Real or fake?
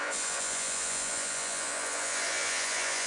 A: fake